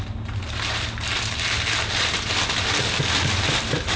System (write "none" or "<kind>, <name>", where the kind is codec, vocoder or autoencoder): none